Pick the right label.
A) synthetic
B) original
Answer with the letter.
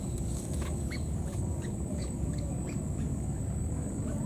A